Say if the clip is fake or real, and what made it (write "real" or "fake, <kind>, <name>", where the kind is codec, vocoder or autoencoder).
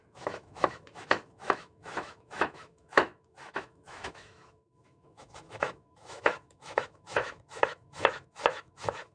fake, autoencoder, DAC-VAE